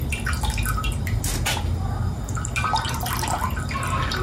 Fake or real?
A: real